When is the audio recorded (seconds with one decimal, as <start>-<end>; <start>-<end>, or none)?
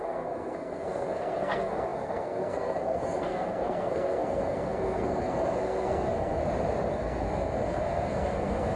6.4-6.9